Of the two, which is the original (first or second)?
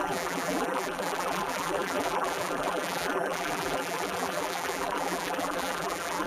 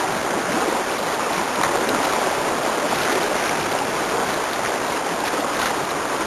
second